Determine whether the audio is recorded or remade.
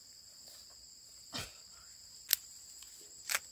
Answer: recorded